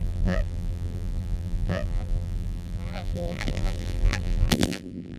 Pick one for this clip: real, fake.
fake